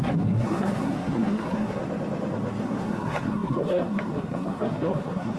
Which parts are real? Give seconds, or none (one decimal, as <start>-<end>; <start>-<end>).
1.8-2.6